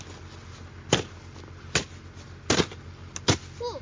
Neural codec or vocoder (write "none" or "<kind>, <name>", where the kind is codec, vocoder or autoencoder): none